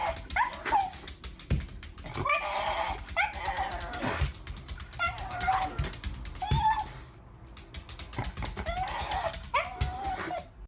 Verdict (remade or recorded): recorded